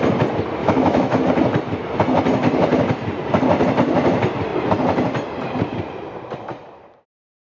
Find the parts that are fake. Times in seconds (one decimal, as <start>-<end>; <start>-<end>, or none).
0.6-1.2